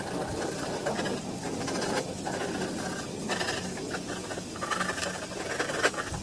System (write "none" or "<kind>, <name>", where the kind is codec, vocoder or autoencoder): none